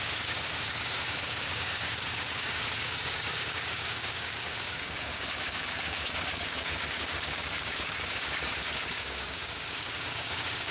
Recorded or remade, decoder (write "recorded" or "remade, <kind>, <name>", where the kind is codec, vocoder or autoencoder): remade, codec, DAC